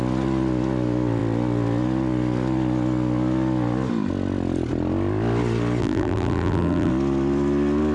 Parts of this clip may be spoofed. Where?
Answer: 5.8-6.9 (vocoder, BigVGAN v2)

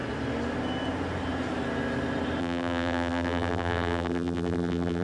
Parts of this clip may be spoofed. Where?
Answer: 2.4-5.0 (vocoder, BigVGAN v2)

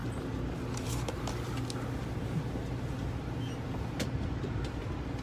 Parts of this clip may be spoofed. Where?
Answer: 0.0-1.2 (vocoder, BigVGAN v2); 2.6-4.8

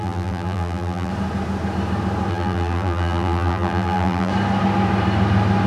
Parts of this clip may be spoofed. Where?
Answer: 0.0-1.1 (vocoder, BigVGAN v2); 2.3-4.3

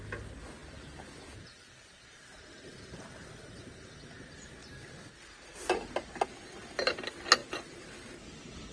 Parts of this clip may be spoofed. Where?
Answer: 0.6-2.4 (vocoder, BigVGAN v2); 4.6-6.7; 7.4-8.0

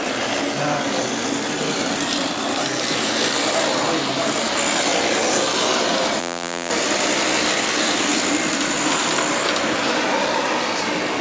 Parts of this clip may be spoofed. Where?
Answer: 6.2-6.7 (vocoder, BigVGAN v2)

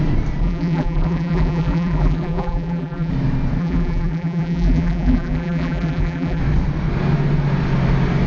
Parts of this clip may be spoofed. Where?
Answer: 0.4-3.1 (vocoder, BigVGAN v2); 3.6-6.4

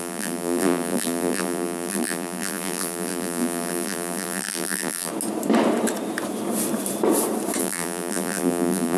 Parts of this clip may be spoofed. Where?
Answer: 0.0-5.1 (vocoder, BigVGAN v2); 7.6-9.0